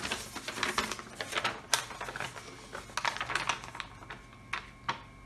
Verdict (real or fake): real